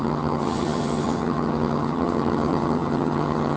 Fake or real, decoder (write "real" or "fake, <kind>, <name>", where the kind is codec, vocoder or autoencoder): fake, vocoder, HiFi-GAN